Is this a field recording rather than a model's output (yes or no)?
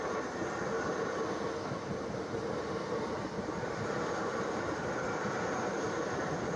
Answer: no